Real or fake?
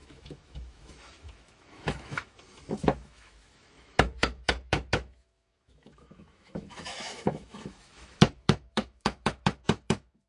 fake